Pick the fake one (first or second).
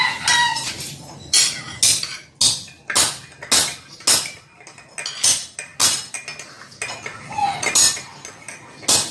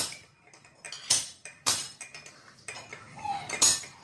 second